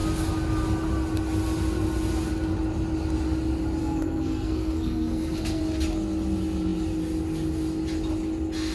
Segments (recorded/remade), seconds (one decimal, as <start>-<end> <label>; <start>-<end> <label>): 0.0-3.8 recorded; 3.8-5.6 remade; 5.6-8.7 recorded